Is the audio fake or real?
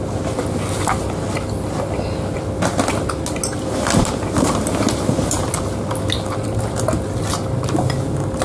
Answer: real